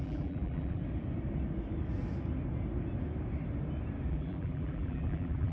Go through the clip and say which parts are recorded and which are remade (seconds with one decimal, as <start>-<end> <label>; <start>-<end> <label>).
0.0-0.8 remade; 0.8-4.1 recorded; 4.1-5.5 remade